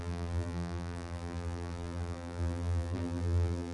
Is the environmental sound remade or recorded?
remade